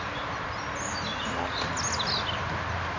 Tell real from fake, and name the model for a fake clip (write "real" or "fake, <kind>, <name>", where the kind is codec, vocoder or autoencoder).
real